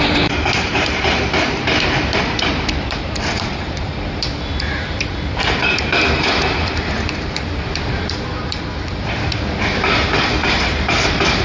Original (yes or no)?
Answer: no